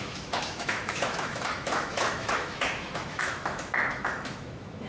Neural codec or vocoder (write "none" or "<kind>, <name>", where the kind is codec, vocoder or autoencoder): autoencoder, DAC-VAE